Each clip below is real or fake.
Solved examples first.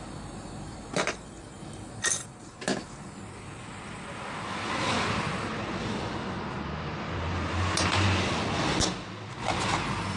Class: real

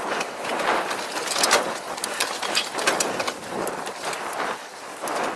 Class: real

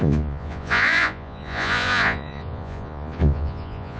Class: fake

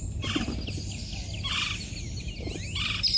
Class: real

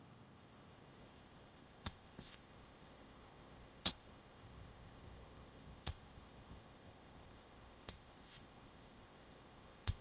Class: fake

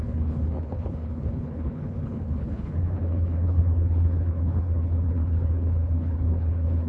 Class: fake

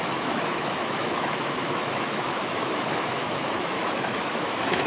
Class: fake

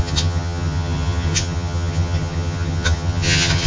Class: fake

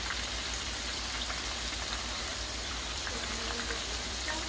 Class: fake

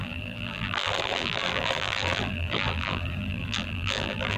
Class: fake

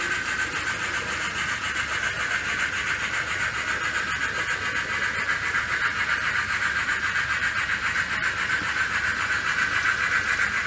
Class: real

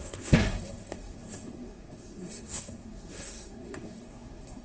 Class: fake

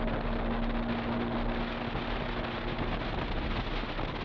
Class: real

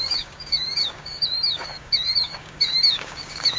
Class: fake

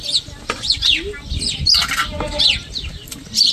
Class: real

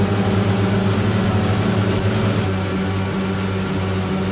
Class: real